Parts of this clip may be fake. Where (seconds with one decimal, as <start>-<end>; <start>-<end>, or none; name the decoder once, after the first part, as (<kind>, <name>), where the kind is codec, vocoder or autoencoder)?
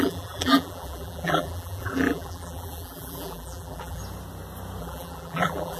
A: 0.0-4.0 (vocoder, BigVGAN v2); 4.8-5.8